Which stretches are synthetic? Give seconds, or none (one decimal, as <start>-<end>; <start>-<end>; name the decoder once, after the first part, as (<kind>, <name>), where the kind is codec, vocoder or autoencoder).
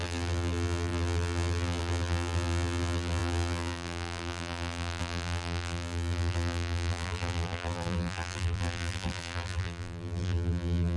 0.0-11.0 (vocoder, BigVGAN v2)